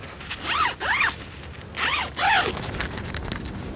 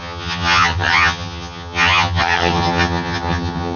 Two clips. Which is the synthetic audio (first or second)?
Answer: second